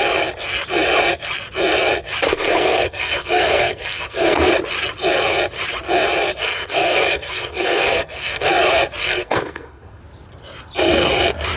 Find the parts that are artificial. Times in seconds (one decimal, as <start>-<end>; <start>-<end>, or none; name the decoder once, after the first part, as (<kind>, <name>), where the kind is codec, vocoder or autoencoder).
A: 2.3-4.5 (codec, SNAC); 6.4-8.5; 9.0-10.0